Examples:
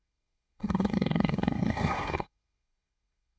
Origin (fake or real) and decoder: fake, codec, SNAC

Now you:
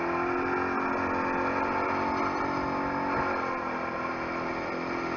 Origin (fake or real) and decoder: real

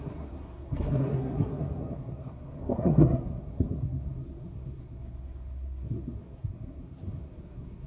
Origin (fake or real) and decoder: fake, codec, SNAC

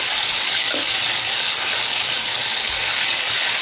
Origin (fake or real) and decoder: fake, codec, DAC